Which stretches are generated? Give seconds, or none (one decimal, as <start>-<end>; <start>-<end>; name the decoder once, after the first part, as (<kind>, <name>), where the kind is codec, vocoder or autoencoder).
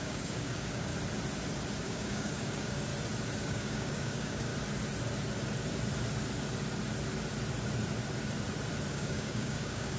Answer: 0.0-0.9 (codec, DAC); 1.8-2.9; 3.4-4.5; 8.9-10.0